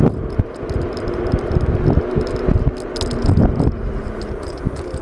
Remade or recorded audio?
recorded